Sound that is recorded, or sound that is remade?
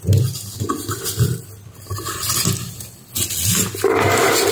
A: recorded